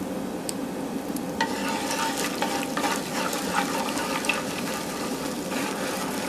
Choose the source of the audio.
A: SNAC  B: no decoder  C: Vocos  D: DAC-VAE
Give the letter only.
B